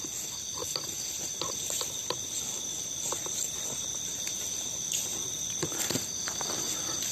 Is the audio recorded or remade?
recorded